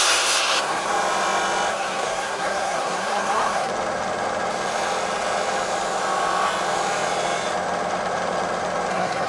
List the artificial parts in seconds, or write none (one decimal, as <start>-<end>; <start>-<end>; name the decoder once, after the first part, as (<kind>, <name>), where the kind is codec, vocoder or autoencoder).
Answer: 0.0-0.9 (codec, SNAC); 1.7-3.7; 8.9-9.3